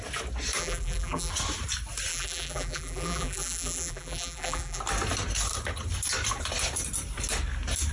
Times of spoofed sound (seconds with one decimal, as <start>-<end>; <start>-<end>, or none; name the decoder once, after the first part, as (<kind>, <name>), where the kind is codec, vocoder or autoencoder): 0.6-1.3 (vocoder, BigVGAN v2); 2.1-4.8